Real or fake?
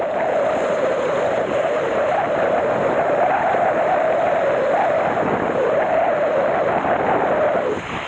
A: real